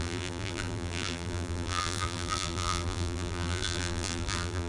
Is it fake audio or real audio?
fake